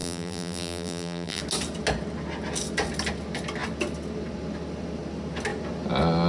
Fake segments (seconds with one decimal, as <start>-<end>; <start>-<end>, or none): 0.0-1.4